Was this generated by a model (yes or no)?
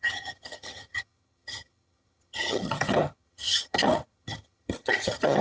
yes